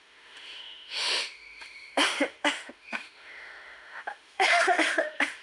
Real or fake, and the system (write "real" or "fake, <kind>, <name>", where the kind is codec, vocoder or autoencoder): fake, autoencoder, DAC-VAE